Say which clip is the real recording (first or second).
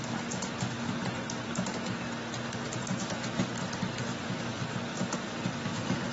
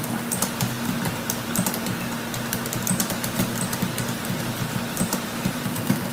first